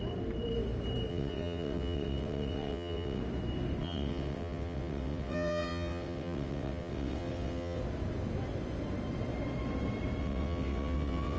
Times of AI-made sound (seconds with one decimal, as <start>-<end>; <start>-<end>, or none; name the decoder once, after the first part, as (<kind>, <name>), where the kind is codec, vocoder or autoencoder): 1.1-3.2 (vocoder, WaveNeXt); 3.8-7.8; 10.2-11.4